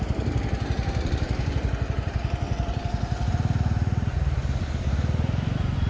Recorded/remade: remade